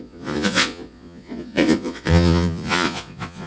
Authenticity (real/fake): fake